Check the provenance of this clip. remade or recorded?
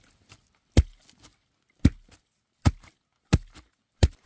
recorded